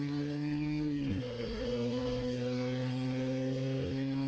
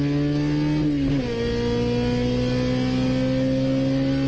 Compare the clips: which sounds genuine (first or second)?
second